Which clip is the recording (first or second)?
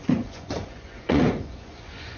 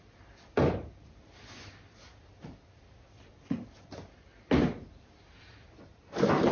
second